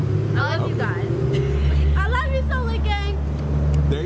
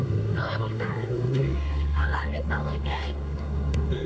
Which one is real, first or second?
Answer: first